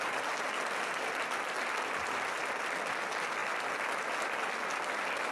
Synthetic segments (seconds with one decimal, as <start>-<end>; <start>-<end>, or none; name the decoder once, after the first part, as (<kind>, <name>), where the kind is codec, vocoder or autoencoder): none